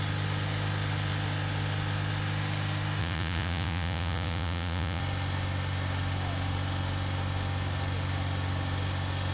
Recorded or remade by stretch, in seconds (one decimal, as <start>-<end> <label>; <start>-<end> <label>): 0.0-3.0 recorded; 3.0-5.0 remade; 5.0-9.3 recorded